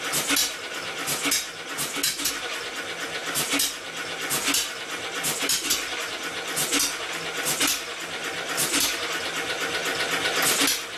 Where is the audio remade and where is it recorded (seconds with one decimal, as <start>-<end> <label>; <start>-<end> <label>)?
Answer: 0.0-11.0 recorded